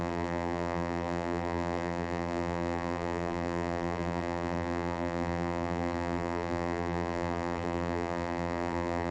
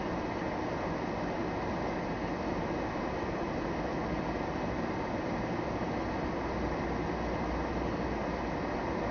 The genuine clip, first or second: second